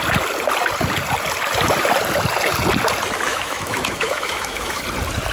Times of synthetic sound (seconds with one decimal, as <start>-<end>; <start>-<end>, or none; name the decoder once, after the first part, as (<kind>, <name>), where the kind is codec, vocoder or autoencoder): 3.3-4.8 (autoencoder, DAC-VAE)